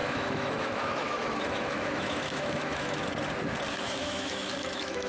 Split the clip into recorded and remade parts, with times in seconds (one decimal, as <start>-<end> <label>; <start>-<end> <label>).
0.0-3.0 remade; 3.0-3.7 recorded; 3.7-5.1 remade